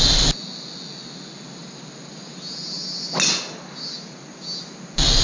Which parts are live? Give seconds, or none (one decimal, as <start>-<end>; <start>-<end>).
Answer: 0.0-5.2